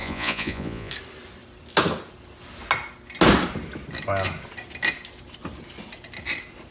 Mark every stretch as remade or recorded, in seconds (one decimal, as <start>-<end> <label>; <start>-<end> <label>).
0.0-0.9 remade; 0.9-6.7 recorded

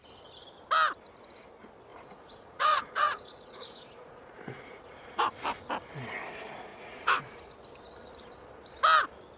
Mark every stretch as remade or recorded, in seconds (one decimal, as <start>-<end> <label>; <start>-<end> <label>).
0.0-1.9 recorded; 1.9-5.2 remade; 5.2-6.7 recorded; 6.7-7.5 remade; 7.5-9.4 recorded

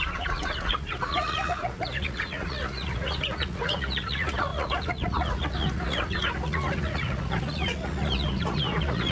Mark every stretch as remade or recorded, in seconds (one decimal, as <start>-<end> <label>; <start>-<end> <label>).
0.0-9.1 remade

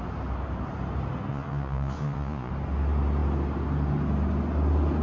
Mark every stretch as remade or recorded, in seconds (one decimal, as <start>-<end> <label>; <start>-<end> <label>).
0.0-1.3 recorded; 1.3-2.5 remade; 2.5-5.0 recorded

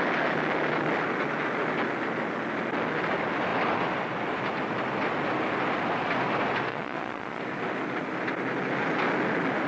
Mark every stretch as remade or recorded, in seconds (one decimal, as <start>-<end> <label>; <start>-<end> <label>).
0.0-6.7 recorded; 6.7-7.4 remade; 7.4-9.7 recorded

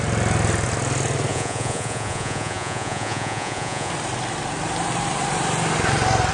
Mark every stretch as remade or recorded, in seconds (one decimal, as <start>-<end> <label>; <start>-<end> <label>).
0.0-1.3 recorded; 1.3-3.9 remade; 3.9-6.3 recorded